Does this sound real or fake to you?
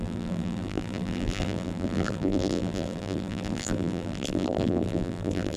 fake